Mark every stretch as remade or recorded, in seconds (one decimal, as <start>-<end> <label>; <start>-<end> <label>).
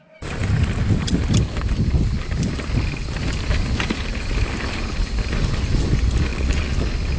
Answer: 0.0-6.3 recorded; 6.3-6.8 remade; 6.8-7.2 recorded